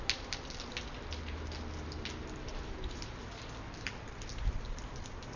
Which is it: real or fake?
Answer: real